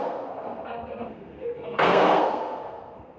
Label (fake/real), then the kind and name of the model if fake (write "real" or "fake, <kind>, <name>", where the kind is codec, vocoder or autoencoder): fake, codec, SNAC